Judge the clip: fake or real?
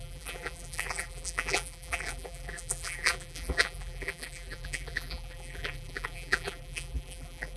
fake